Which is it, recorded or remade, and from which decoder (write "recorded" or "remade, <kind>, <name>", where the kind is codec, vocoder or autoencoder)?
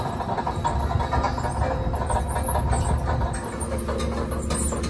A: recorded